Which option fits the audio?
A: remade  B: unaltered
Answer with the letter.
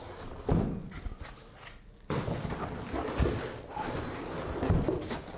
B